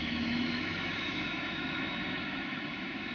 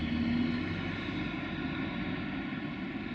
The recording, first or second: second